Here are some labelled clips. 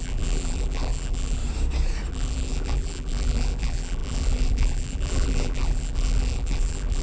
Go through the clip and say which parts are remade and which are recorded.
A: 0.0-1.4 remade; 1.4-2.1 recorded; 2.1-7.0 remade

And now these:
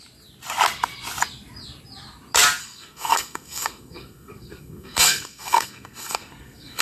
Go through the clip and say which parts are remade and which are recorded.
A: 0.0-2.6 recorded; 2.6-6.8 remade

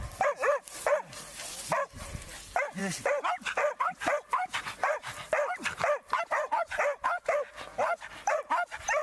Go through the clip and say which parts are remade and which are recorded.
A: 0.0-9.0 recorded

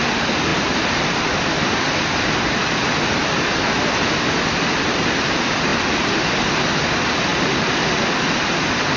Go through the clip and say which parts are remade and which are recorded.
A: 0.0-0.5 recorded; 0.5-3.7 remade; 3.7-9.0 recorded

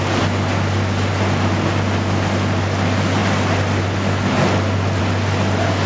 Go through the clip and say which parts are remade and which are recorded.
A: 0.0-5.9 recorded

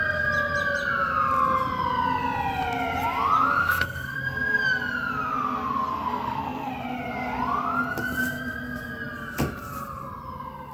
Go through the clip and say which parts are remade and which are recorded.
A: 0.0-3.6 recorded; 3.6-4.2 remade; 4.2-5.9 recorded; 5.9-6.7 remade; 6.7-10.7 recorded

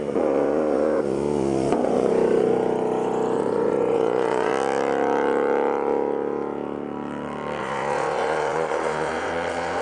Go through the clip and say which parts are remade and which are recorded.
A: 0.0-4.5 remade; 4.5-7.6 recorded; 7.6-9.8 remade

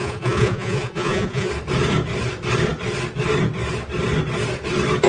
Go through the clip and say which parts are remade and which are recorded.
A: 0.0-1.5 remade; 1.5-5.1 recorded